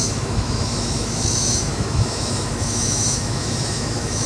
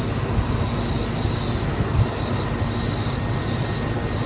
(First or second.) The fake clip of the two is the first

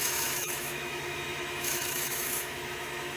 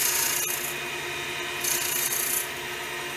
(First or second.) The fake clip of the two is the first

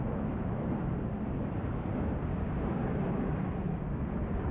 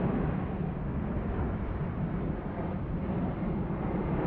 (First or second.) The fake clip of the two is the first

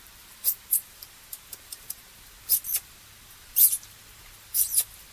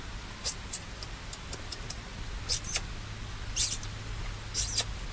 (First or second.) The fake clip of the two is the first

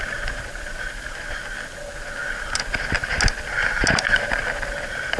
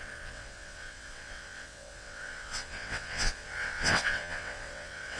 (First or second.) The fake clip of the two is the second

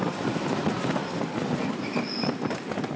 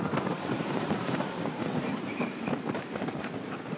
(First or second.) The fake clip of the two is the second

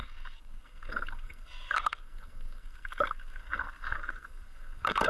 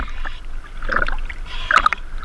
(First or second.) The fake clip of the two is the first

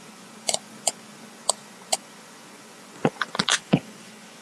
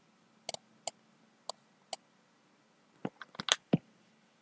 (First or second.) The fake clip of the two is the first